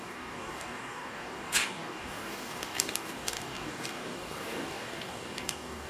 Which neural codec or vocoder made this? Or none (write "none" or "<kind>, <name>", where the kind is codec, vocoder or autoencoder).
codec, DAC